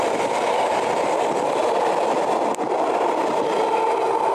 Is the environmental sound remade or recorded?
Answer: remade